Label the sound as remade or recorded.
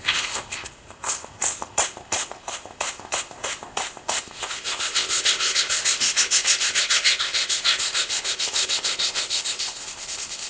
remade